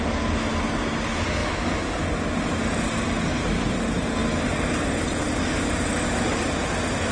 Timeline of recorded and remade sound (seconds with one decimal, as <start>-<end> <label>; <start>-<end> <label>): 0.0-7.1 recorded